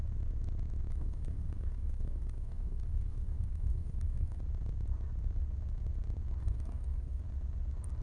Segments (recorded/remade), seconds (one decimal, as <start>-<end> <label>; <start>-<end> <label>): 0.0-0.9 recorded; 0.9-4.4 remade; 4.4-6.4 recorded; 6.4-7.2 remade; 7.2-8.0 recorded